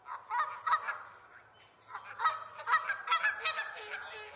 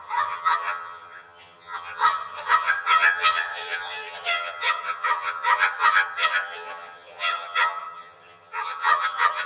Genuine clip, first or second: first